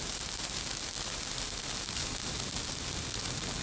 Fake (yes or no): no